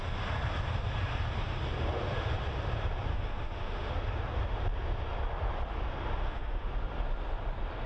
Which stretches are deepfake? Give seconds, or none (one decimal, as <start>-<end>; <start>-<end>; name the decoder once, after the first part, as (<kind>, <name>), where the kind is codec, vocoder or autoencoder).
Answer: 3.1-3.9 (autoencoder, DAC-VAE); 6.2-6.7